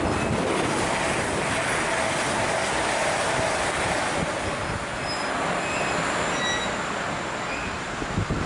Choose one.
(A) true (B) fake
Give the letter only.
A